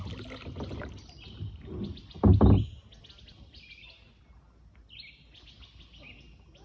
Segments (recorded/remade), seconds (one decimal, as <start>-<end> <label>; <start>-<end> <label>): 0.0-6.6 recorded